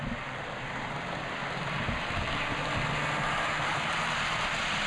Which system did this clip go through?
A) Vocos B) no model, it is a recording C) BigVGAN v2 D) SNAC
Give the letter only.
B